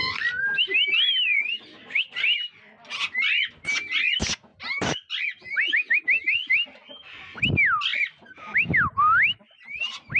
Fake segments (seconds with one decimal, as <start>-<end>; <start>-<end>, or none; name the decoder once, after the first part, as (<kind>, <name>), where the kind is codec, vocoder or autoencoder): 1.3-2.0 (vocoder, BigVGAN v2); 4.5-5.2; 7.9-8.9